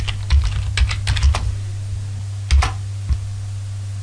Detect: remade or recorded recorded